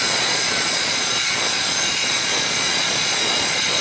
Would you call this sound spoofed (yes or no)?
yes